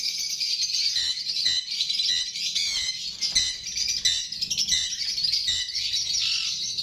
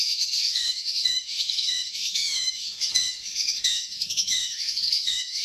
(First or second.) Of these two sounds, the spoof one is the second